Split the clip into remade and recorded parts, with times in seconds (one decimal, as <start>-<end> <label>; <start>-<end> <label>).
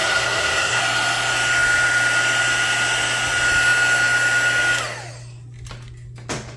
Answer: 0.0-0.8 remade; 0.8-6.6 recorded